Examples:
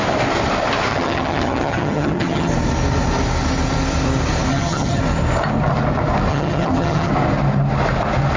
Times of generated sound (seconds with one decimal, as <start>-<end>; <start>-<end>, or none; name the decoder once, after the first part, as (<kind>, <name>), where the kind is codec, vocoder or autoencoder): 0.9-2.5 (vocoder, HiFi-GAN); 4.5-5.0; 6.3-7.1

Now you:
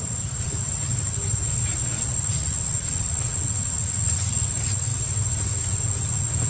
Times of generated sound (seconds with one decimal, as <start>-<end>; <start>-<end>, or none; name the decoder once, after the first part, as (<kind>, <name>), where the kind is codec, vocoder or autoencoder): 2.4-4.5 (vocoder, Vocos)

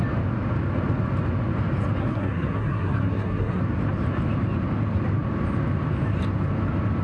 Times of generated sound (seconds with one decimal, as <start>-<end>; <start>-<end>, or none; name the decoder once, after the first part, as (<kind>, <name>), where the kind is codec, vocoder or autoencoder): 2.0-3.6 (codec, SNAC)

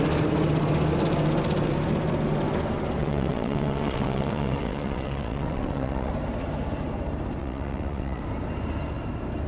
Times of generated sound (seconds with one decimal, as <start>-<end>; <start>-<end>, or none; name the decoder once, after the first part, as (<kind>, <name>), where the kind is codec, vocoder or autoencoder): 3.0-6.1 (vocoder, WaveNeXt); 7.4-8.2

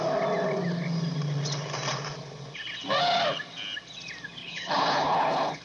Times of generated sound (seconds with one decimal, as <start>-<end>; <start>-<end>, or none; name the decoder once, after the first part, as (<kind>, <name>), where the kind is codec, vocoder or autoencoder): 4.4-5.6 (codec, HILCodec)

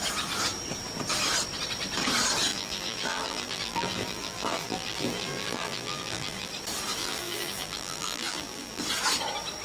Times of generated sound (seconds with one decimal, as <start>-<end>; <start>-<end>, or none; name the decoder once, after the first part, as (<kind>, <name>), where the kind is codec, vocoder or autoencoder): 2.5-6.5 (vocoder, BigVGAN v2); 7.0-8.8

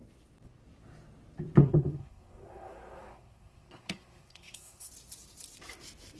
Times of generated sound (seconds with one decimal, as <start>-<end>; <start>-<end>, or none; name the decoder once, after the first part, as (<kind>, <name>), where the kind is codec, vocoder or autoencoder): 1.6-4.9 (codec, SNAC)

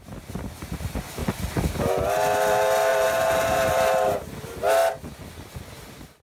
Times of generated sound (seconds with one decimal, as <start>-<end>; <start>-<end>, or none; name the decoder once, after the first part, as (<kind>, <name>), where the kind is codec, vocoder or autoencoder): 2.9-4.3 (vocoder, BigVGAN v2)